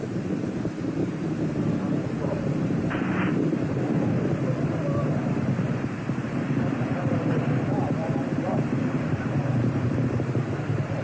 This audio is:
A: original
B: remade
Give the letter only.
B